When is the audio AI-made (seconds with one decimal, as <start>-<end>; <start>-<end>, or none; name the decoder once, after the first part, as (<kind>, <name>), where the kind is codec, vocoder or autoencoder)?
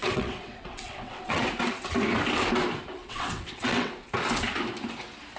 0.0-1.5 (vocoder, WaveNeXt); 3.0-3.9